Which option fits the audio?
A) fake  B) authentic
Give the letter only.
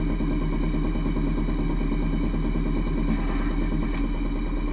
B